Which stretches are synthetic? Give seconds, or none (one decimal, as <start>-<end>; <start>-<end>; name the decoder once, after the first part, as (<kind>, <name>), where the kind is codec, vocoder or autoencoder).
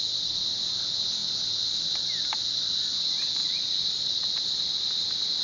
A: 3.4-4.5 (vocoder, Vocos)